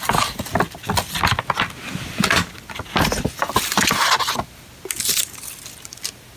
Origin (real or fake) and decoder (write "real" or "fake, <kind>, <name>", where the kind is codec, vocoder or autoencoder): real